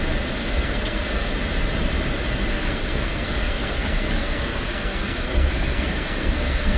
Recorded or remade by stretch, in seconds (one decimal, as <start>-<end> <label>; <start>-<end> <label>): 0.0-0.4 recorded; 0.4-1.3 remade; 1.3-2.5 recorded; 2.5-6.8 remade